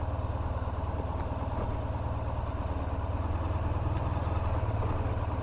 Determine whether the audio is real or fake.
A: real